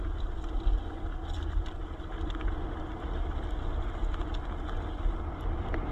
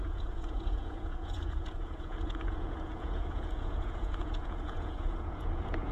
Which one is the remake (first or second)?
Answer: second